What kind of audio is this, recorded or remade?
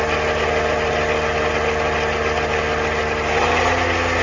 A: recorded